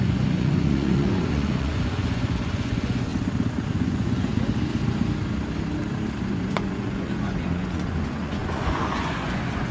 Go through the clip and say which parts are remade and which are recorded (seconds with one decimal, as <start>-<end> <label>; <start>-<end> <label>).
0.0-3.1 remade; 3.1-3.7 recorded; 3.7-4.3 remade; 4.3-6.2 recorded; 6.2-9.7 remade